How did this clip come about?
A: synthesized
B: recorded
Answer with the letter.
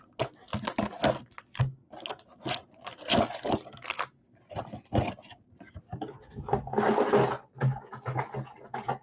B